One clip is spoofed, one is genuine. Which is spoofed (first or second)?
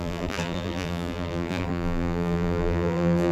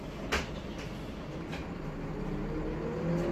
first